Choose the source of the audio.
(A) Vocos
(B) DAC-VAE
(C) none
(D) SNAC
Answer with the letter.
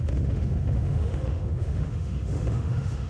B